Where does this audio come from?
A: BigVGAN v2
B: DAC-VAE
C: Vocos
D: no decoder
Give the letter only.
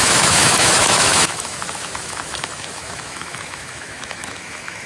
B